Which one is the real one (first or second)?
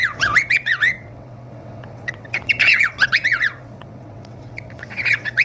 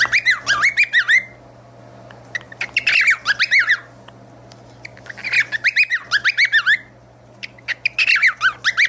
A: second